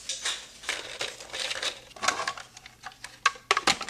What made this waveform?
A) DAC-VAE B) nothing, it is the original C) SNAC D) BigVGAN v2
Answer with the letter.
B